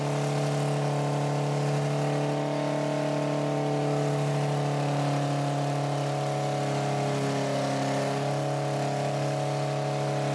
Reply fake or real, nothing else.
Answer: real